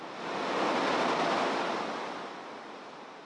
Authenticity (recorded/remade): recorded